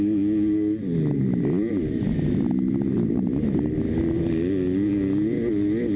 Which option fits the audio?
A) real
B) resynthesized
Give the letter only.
A